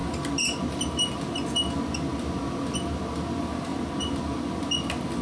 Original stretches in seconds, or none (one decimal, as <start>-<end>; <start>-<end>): 0.0-5.2